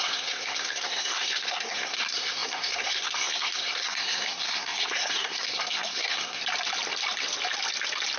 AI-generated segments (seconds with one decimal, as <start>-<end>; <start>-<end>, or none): 0.0-6.4